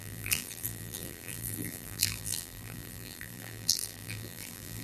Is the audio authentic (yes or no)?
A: no